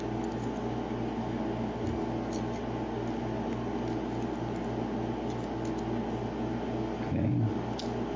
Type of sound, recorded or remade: recorded